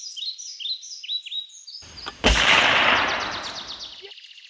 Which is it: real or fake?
real